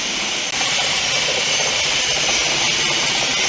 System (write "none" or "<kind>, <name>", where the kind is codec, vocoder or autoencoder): none